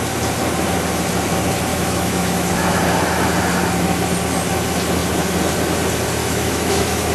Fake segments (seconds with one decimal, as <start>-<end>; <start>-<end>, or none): 1.7-2.8; 6.2-7.1